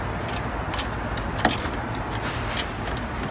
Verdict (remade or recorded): recorded